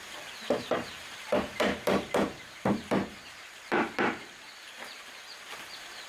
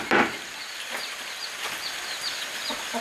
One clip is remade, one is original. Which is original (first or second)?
second